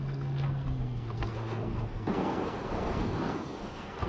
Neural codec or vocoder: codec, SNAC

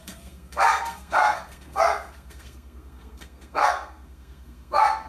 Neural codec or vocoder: codec, SNAC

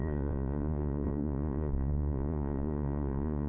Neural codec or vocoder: vocoder, Vocos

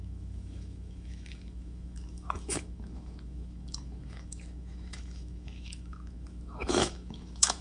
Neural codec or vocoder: autoencoder, DAC-VAE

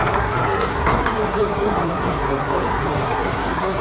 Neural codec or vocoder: codec, SNAC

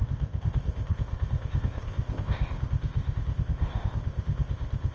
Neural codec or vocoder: codec, ZipCodec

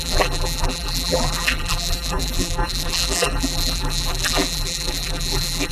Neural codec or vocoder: vocoder, BigVGAN v2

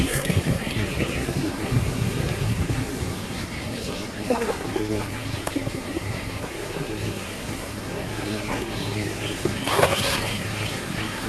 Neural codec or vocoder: codec, SNAC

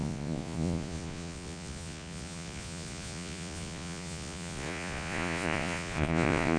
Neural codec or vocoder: vocoder, Vocos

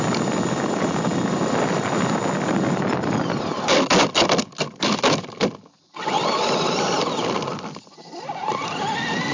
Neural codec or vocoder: none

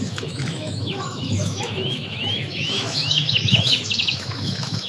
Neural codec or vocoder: autoencoder, DAC-VAE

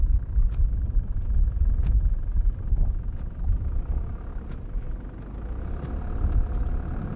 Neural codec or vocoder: none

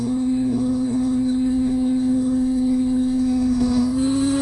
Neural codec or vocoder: codec, SNAC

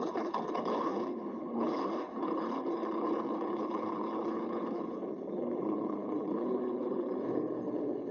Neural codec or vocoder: codec, HILCodec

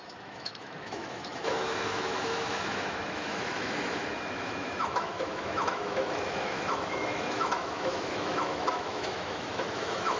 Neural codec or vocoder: autoencoder, DAC-VAE